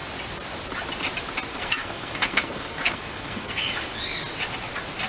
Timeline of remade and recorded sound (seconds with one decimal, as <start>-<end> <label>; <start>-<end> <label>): 0.0-1.5 recorded; 1.5-3.7 remade; 3.7-5.1 recorded